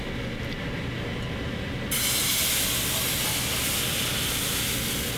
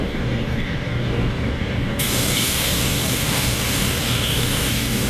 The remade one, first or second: second